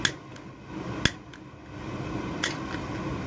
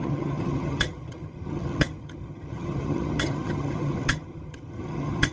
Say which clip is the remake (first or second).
second